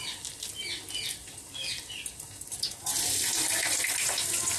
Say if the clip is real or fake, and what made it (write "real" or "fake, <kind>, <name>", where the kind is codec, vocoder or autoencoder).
real